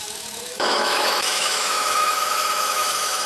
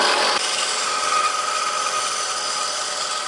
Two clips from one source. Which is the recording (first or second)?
second